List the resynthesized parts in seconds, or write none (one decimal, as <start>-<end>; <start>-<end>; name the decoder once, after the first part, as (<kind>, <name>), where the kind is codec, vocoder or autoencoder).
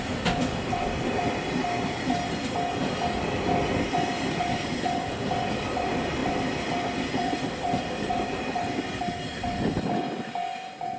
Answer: none